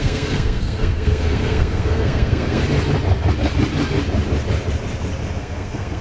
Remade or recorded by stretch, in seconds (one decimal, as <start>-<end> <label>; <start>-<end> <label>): 0.0-2.6 remade; 2.6-5.4 recorded; 5.4-6.0 remade